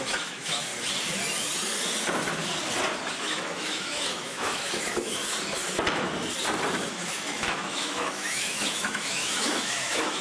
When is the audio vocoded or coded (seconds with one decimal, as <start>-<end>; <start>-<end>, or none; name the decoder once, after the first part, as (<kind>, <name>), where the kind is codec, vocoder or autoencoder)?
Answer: 0.0-0.7 (autoencoder, DAC-VAE); 3.2-5.2; 6.9-10.2